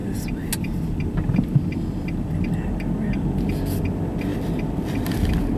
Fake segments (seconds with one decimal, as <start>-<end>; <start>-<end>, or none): none